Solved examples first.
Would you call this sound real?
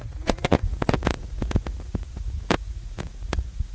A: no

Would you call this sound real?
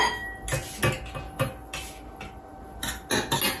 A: yes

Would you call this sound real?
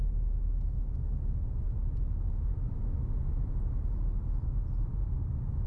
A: yes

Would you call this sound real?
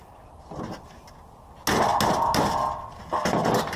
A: yes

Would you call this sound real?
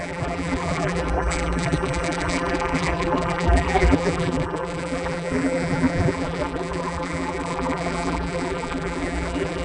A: no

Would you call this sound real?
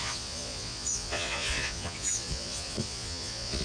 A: no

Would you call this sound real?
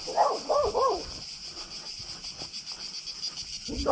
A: yes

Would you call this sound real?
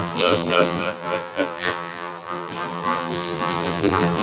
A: no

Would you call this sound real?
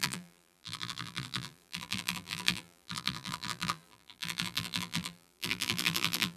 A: no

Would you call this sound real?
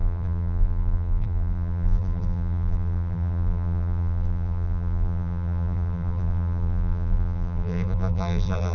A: no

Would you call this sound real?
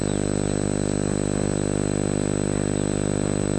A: yes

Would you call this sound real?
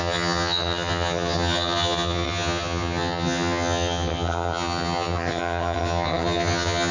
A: no